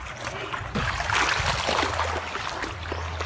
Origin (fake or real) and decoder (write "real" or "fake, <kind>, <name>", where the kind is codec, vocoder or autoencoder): real